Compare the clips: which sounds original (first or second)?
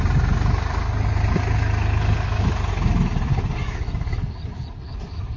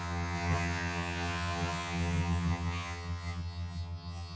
first